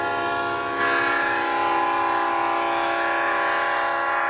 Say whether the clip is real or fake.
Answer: real